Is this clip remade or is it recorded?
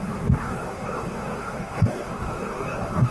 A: remade